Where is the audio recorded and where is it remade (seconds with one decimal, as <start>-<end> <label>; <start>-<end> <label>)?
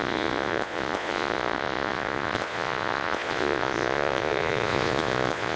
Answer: 0.0-5.6 remade